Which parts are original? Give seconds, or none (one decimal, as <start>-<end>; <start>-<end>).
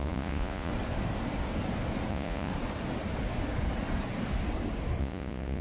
0.7-2.1; 2.5-5.0